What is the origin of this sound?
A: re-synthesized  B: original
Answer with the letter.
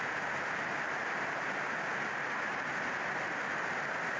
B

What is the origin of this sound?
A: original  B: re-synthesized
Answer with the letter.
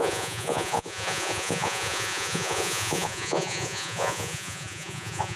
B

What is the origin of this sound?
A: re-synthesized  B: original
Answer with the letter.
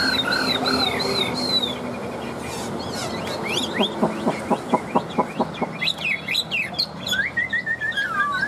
B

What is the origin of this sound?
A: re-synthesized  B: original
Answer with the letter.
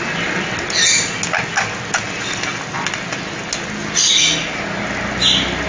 B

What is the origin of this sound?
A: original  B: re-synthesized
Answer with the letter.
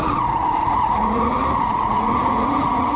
B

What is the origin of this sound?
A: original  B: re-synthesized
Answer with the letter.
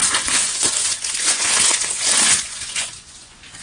B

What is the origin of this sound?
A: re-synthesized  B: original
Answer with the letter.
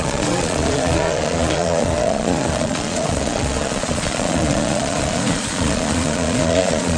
A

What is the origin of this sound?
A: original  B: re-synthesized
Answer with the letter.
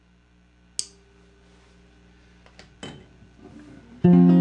A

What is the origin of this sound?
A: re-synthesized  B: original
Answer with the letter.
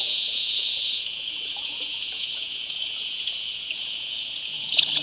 A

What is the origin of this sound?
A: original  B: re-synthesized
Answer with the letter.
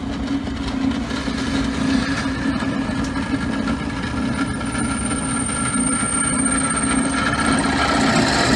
A